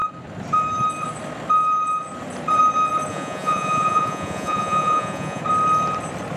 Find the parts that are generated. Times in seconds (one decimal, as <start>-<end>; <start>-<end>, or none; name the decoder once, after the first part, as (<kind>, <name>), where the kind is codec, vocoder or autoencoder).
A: 3.1-5.4 (vocoder, Vocos)